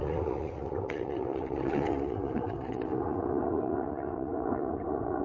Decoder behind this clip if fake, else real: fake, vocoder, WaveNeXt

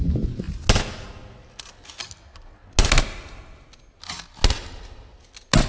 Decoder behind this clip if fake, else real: real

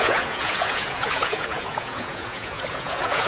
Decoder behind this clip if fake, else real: fake, vocoder, Vocos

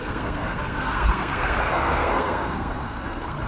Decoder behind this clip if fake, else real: fake, codec, SNAC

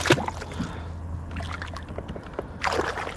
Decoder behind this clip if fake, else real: real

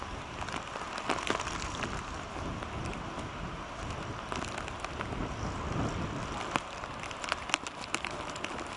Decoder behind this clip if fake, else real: real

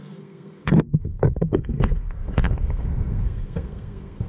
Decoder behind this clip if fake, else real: fake, codec, SNAC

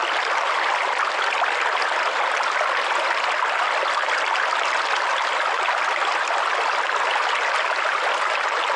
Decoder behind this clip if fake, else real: real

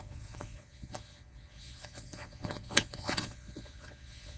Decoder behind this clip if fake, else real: fake, vocoder, Vocos